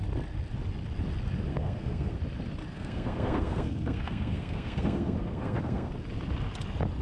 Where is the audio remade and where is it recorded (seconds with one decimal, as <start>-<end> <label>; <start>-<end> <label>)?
0.0-1.5 recorded; 1.5-2.2 remade; 2.2-2.7 recorded; 2.7-5.9 remade; 5.9-7.0 recorded